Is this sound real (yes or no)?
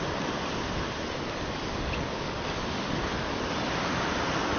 yes